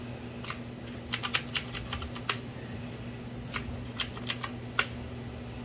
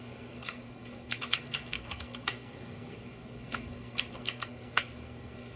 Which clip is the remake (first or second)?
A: second